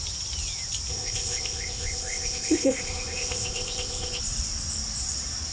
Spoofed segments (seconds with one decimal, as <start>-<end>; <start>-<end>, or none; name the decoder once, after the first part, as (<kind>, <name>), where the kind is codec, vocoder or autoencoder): 0.9-4.2 (codec, ZipCodec)